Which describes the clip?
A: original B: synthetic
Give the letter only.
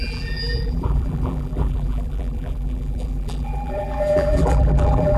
B